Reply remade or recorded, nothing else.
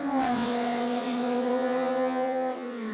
remade